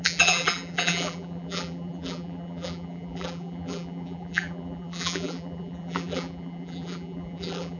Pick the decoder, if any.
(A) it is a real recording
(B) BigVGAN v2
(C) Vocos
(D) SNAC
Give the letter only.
B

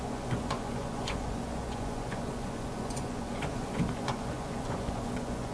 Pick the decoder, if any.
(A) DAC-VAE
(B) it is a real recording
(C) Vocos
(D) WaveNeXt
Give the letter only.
C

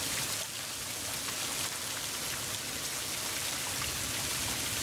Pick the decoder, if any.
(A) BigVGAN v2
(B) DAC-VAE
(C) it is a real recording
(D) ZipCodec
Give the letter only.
C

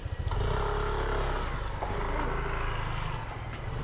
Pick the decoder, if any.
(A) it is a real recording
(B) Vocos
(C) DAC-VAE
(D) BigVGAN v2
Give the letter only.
A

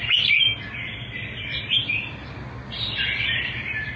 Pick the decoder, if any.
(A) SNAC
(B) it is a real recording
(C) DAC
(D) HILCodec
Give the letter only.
B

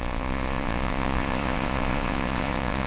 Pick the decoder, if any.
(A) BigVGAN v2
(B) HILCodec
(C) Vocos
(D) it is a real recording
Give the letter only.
C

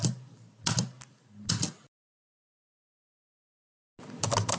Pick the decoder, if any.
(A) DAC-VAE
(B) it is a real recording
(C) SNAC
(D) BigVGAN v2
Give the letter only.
B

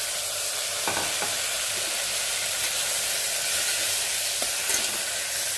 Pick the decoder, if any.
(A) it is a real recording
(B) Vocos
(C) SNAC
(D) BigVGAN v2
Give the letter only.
A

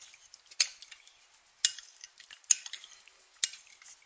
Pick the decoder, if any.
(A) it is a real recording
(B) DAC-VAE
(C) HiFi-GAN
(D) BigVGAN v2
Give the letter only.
A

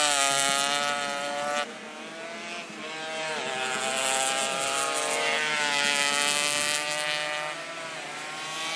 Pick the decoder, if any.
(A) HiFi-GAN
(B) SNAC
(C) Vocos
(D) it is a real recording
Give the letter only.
D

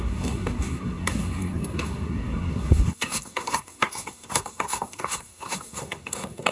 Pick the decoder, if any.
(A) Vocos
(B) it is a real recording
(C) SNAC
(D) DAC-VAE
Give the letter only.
C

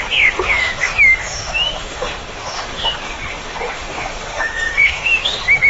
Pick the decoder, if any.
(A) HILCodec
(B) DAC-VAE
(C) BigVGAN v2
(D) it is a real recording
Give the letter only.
B